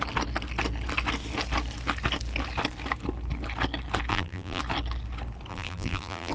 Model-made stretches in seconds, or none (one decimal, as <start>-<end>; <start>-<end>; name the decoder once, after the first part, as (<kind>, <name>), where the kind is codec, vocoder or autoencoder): 4.1-4.6 (vocoder, BigVGAN v2); 5.5-6.3